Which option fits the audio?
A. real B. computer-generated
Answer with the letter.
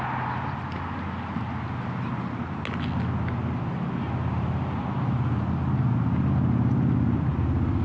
A